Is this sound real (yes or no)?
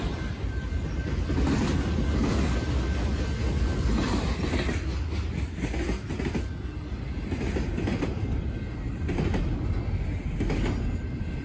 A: yes